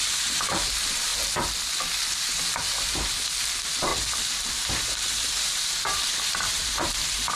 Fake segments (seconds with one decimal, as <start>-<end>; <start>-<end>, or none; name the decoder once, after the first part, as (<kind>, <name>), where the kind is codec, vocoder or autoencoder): 0.0-1.1 (vocoder, BigVGAN v2); 2.0-3.9; 4.5-7.4